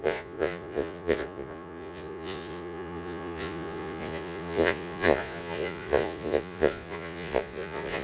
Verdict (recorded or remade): remade